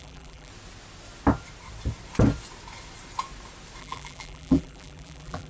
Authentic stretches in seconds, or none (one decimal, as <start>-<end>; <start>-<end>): 0.5-3.8